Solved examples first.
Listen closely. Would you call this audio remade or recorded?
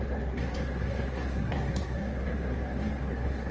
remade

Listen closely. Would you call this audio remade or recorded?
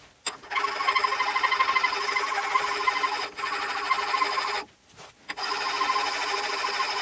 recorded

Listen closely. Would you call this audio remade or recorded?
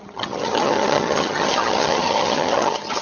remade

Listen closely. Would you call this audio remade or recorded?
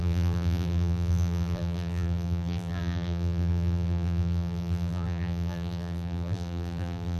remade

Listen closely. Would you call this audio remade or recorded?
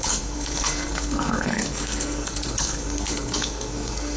remade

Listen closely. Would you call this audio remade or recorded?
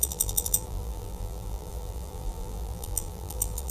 remade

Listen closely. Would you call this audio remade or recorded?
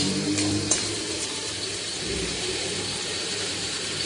remade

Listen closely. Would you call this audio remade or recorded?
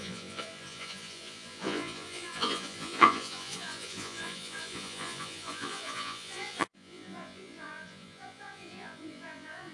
remade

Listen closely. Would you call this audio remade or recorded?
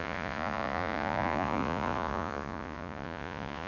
remade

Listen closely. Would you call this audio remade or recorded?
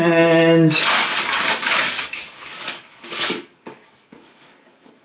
remade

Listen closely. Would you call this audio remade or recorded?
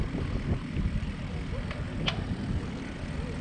recorded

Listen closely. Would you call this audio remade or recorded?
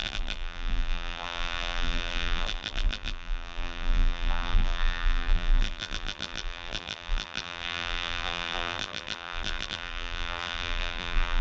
remade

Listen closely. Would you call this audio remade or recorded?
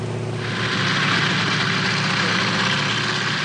recorded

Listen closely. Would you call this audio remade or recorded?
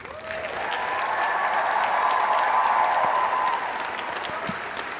recorded